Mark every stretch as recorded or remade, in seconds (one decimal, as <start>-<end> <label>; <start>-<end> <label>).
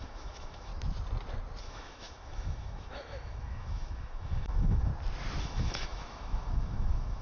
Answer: 0.0-0.7 remade; 0.7-1.6 recorded; 1.6-4.9 remade; 4.9-5.4 recorded; 5.4-7.2 remade